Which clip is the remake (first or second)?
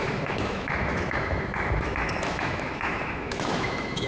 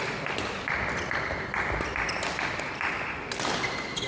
first